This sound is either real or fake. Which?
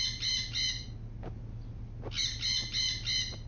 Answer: real